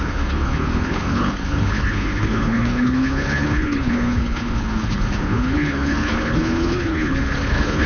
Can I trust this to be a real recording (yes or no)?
no